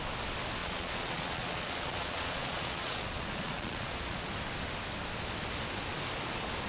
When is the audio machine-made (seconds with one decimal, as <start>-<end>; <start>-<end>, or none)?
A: 0.6-4.3